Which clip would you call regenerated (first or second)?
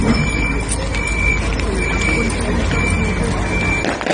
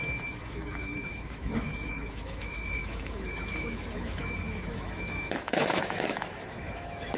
second